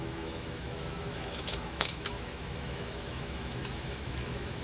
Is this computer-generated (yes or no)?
yes